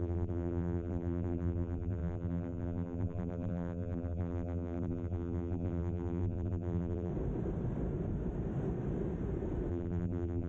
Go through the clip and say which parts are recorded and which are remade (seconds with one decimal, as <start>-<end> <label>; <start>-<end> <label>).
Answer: 0.0-7.1 remade; 7.1-9.7 recorded; 9.7-10.5 remade

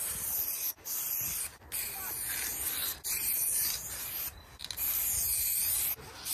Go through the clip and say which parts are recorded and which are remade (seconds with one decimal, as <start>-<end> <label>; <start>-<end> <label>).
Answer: 0.0-2.8 recorded; 2.8-4.4 remade; 4.4-6.3 recorded